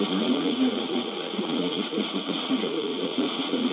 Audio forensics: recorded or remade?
remade